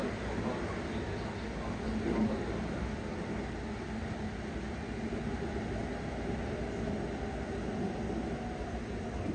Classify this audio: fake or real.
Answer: real